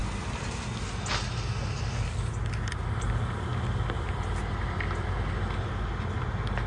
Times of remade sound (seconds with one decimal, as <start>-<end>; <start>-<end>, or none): none

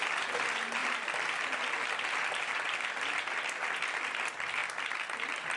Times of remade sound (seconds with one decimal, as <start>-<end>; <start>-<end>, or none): none

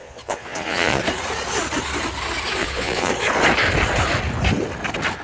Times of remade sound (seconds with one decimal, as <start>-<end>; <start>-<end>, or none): 0.0-1.0; 2.6-3.1

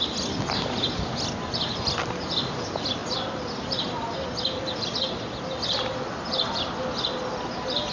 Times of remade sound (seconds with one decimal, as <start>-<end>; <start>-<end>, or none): none

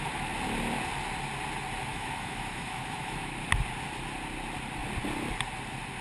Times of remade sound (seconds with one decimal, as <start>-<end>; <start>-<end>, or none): 1.9-3.5

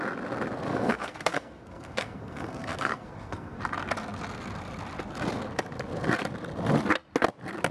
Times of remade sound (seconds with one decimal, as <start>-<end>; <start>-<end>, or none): 0.7-3.6

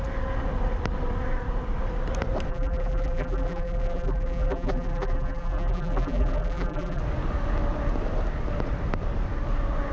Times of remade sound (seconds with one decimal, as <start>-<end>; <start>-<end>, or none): 2.5-7.0